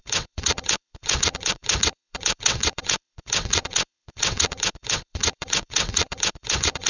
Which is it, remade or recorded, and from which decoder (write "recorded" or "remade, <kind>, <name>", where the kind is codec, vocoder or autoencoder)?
remade, vocoder, WaveNeXt